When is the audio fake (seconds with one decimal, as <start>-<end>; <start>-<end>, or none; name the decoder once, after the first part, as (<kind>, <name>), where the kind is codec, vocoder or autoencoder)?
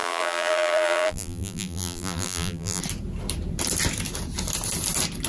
0.0-2.8 (vocoder, BigVGAN v2)